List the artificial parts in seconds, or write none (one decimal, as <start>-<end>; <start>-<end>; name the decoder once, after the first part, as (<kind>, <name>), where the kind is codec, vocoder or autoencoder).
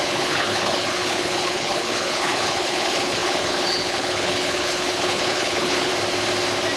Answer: 0.0-5.9 (codec, HILCodec)